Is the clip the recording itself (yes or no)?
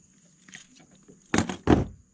yes